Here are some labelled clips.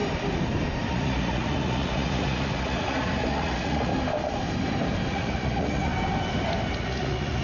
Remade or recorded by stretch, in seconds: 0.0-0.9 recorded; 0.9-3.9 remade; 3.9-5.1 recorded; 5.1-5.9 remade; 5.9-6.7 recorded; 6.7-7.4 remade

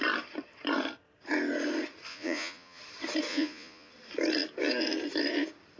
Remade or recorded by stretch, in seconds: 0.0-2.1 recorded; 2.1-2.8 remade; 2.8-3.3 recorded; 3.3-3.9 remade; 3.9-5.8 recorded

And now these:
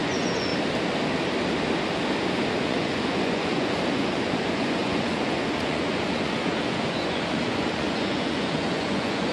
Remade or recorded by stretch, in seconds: 0.0-0.5 remade; 0.5-2.6 recorded; 2.6-9.3 remade

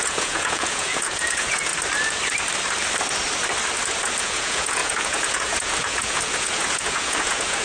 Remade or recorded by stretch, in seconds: 0.0-1.7 remade; 1.7-4.2 recorded; 4.2-7.6 remade

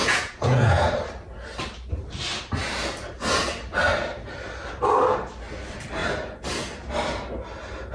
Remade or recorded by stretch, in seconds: 0.0-0.9 remade; 0.9-7.9 recorded

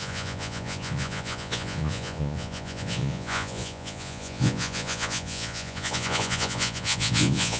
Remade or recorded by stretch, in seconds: 0.0-7.6 remade

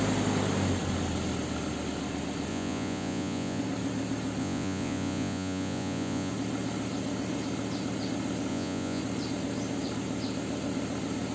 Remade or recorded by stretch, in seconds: 0.0-2.5 recorded; 2.5-3.6 remade; 3.6-4.4 recorded; 4.4-6.3 remade; 6.3-8.5 recorded; 8.5-9.0 remade; 9.0-11.3 recorded